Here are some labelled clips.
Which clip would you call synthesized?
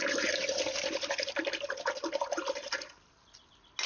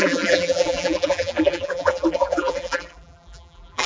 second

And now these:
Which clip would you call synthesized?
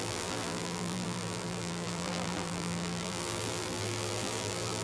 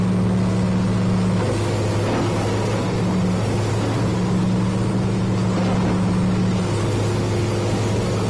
first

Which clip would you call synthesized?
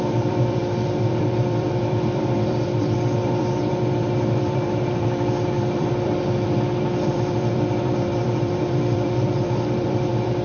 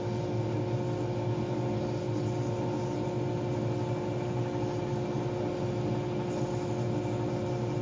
first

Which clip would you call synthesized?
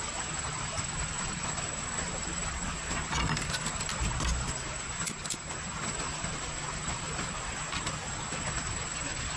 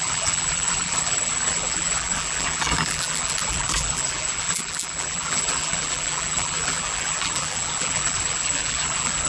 second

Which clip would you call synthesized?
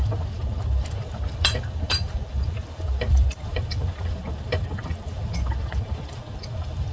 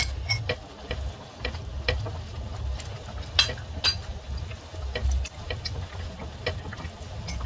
first